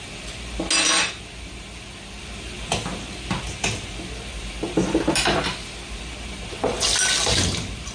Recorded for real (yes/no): yes